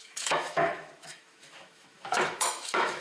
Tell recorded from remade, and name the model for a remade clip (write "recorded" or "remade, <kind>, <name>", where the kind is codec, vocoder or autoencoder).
remade, autoencoder, DAC-VAE